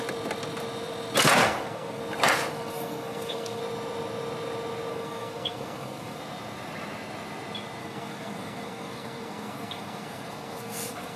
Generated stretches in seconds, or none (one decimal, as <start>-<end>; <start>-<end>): 1.4-2.0; 2.5-3.6; 4.9-6.2; 7.8-11.2